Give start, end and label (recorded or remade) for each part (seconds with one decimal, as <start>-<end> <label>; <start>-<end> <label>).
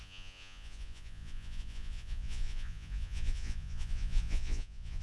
0.0-5.0 remade